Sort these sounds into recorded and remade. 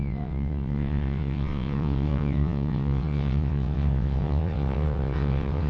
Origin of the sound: remade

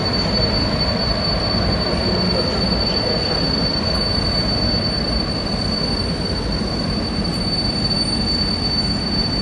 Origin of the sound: recorded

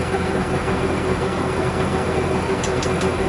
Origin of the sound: remade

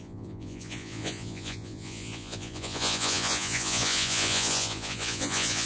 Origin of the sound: remade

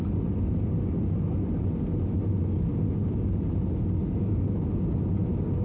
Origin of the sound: recorded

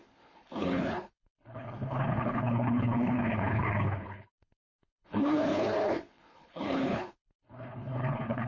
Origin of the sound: remade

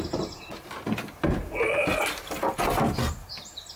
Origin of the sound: recorded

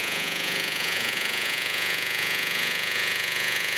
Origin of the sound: remade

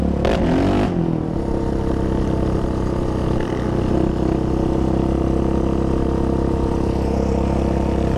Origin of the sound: recorded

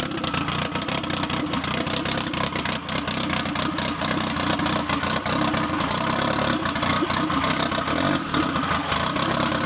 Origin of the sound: remade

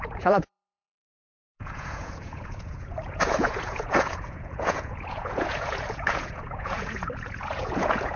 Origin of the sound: remade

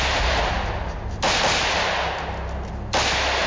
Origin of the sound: recorded